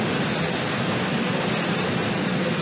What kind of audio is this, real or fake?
real